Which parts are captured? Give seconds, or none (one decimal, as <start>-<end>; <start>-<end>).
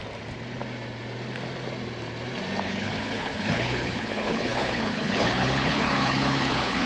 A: 0.0-2.6